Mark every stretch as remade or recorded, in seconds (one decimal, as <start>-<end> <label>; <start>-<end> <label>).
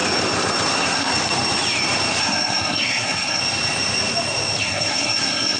0.0-0.7 recorded; 0.7-1.1 remade; 1.1-2.2 recorded; 2.2-3.4 remade; 3.4-4.6 recorded; 4.6-5.6 remade